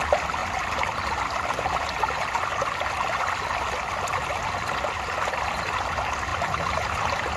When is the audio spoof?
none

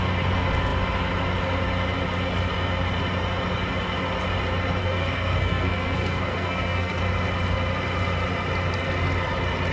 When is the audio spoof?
4.8-7.0 (codec, SNAC)

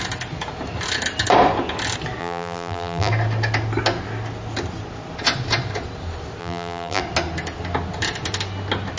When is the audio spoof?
2.2-3.1 (vocoder, BigVGAN v2); 6.4-7.0

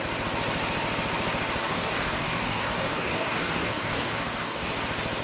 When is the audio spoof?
1.6-4.7 (codec, DAC)

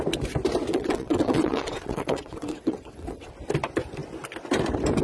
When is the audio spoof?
0.7-3.3 (vocoder, WaveNeXt)

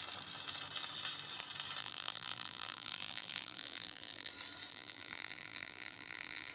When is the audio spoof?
1.8-4.3 (vocoder, BigVGAN v2); 4.7-6.5

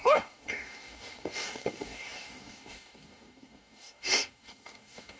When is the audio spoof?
0.0-5.2 (codec, DAC)